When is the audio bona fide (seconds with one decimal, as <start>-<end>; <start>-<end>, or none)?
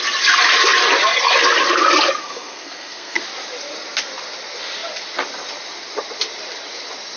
0.0-2.2; 3.2-7.2